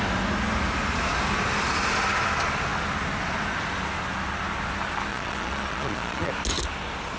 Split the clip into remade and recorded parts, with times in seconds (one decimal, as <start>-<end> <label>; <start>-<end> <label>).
0.0-5.1 recorded; 5.1-6.3 remade; 6.3-7.2 recorded